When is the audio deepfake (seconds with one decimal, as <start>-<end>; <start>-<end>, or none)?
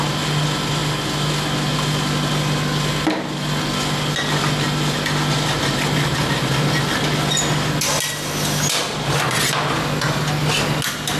none